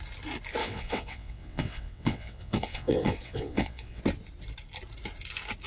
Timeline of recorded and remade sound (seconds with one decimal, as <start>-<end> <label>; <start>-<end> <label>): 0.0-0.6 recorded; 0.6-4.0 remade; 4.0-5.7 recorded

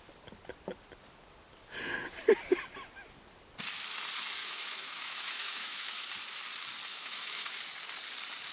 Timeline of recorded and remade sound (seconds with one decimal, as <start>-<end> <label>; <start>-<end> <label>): 0.0-4.4 recorded; 4.4-6.1 remade; 6.1-6.9 recorded; 6.9-7.6 remade; 7.6-8.5 recorded

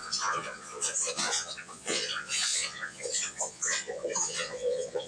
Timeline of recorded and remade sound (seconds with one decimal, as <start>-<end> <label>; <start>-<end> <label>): 0.0-5.1 remade

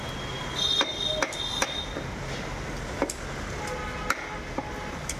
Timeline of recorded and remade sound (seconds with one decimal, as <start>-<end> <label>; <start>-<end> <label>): 0.0-5.2 recorded

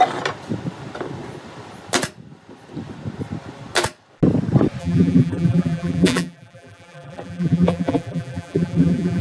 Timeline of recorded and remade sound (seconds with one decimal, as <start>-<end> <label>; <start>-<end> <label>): 0.0-4.8 recorded; 4.8-9.2 remade